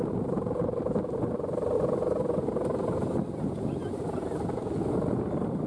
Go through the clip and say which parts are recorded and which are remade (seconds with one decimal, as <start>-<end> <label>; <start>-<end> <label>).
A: 0.0-5.7 recorded